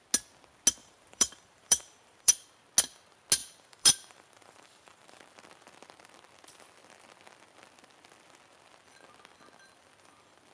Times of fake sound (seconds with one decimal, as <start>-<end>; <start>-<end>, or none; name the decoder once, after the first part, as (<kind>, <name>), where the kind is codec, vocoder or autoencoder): 0.8-2.3 (vocoder, BigVGAN v2); 3.4-5.2